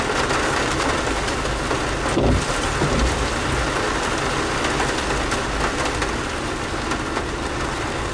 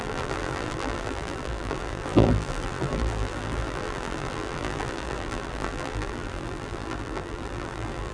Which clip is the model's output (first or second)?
second